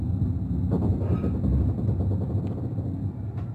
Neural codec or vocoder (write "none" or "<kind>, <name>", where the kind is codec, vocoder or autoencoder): none